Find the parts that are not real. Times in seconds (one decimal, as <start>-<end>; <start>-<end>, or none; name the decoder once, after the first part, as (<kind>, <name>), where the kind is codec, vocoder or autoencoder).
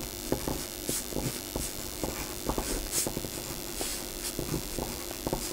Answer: none